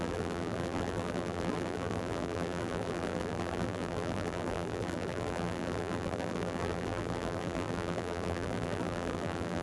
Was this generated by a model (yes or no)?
yes